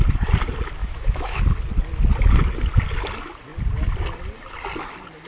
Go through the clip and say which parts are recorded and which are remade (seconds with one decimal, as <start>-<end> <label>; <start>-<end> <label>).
0.0-0.8 recorded; 0.8-1.4 remade; 1.4-5.3 recorded